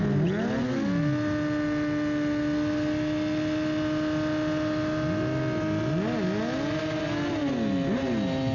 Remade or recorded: recorded